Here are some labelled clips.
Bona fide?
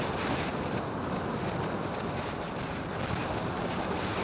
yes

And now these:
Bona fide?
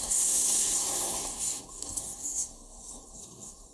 no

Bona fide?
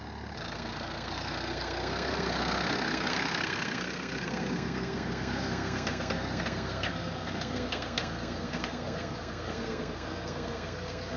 no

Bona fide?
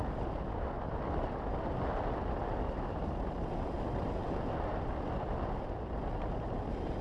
yes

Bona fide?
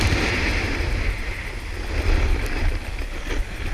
yes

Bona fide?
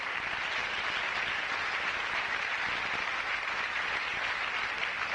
yes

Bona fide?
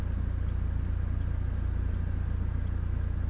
yes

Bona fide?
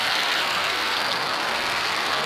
no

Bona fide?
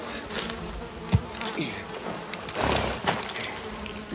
yes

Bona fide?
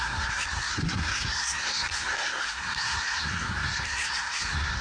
no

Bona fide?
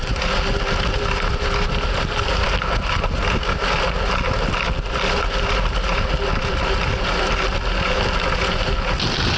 yes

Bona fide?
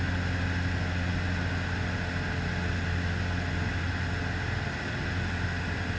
yes